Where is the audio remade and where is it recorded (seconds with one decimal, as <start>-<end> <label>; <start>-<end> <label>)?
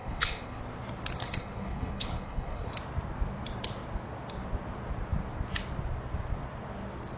0.0-0.6 remade; 0.6-1.2 recorded; 1.2-2.7 remade; 2.7-7.2 recorded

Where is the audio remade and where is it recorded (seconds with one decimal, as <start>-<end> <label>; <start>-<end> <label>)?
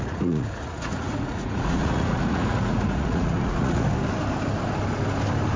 0.0-3.9 remade; 3.9-5.6 recorded